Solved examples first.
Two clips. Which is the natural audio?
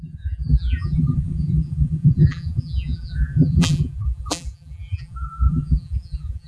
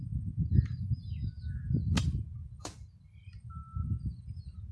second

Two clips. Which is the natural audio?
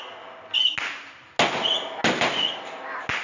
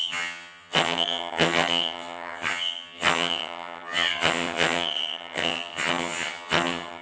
first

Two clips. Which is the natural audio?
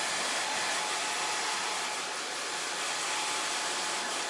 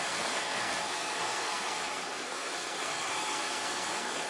first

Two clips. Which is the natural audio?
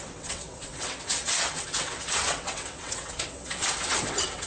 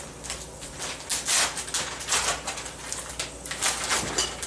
second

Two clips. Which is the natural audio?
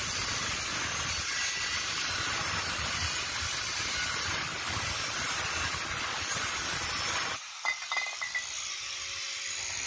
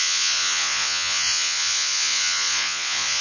first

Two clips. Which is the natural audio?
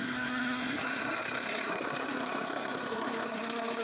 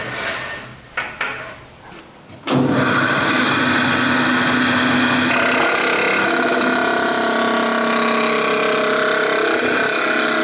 second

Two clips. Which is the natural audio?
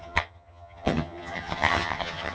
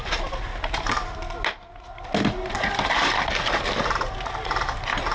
second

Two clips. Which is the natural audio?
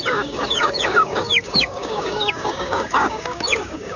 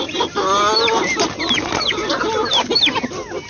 second